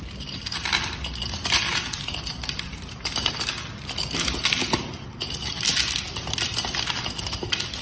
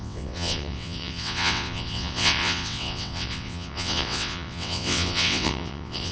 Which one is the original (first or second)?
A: first